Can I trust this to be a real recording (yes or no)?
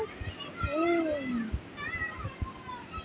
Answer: yes